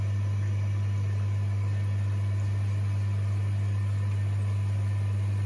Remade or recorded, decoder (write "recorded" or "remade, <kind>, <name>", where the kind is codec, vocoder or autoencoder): recorded